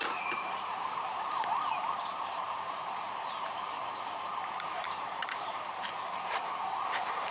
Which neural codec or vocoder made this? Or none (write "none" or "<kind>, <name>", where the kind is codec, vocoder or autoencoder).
vocoder, BigVGAN v2